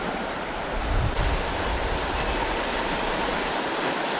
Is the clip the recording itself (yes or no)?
yes